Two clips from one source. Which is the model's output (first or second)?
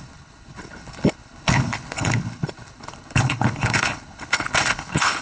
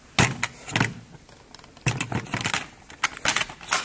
first